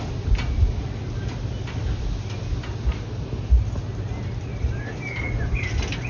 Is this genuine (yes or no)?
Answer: yes